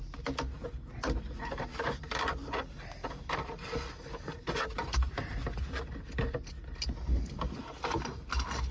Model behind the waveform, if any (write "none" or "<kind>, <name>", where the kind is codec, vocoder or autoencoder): none